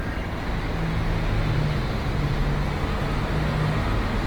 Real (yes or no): yes